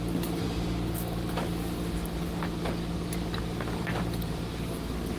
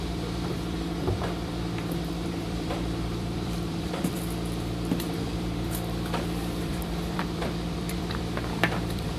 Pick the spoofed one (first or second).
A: second